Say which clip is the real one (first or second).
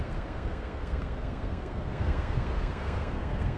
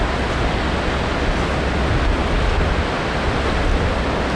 second